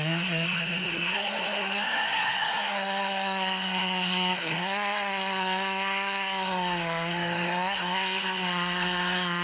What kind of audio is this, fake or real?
fake